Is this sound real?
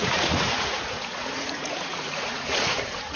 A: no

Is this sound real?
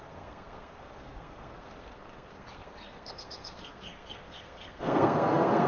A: no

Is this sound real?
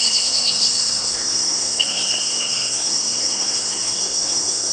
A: no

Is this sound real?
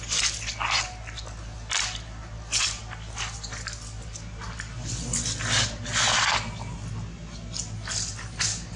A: yes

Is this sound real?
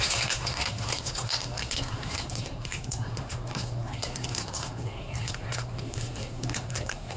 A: no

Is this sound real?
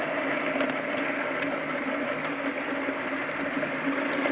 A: no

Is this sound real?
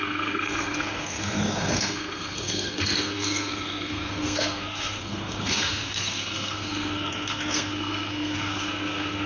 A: no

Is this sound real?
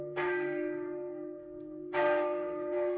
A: no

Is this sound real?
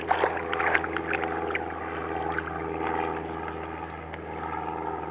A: yes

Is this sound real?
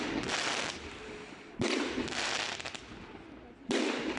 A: yes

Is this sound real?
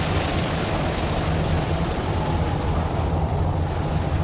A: yes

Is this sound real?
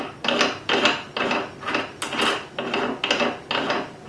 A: yes